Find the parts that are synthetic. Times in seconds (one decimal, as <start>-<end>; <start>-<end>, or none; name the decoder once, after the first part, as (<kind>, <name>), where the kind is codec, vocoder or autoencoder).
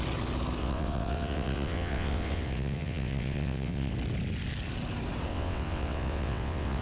0.6-3.9 (vocoder, WaveNeXt); 5.3-6.8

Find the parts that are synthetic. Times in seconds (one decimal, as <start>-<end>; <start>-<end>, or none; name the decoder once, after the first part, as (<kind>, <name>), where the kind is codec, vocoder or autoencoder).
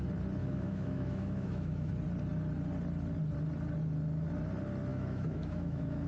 0.4-1.9 (autoencoder, DAC-VAE); 4.9-6.1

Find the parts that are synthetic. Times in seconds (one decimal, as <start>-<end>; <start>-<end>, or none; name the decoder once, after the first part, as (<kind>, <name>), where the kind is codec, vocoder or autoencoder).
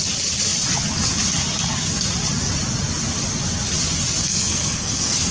4.2-5.3 (codec, SNAC)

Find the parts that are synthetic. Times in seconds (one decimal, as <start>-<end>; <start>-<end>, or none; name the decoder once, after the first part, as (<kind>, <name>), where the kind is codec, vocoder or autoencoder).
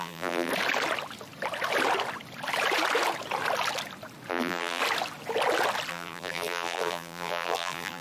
0.0-0.5 (vocoder, BigVGAN v2); 4.3-4.8; 5.9-8.0